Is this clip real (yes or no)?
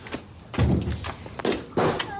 yes